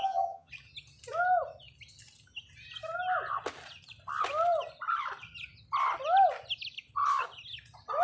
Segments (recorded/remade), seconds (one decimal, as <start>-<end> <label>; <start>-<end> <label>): 0.0-0.5 remade; 0.5-8.0 recorded